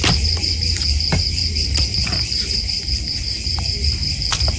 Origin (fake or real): fake